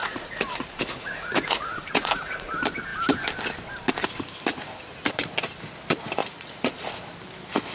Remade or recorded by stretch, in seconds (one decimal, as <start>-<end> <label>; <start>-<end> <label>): 0.0-2.5 remade; 2.5-6.2 recorded; 6.2-6.9 remade; 6.9-7.7 recorded